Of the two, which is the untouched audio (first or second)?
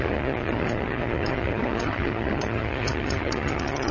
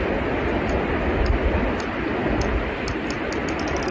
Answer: second